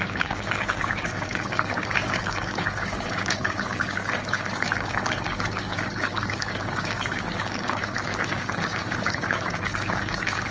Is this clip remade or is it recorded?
remade